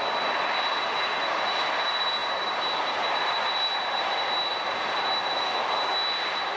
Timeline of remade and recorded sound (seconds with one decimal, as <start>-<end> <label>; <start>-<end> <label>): 0.0-6.6 recorded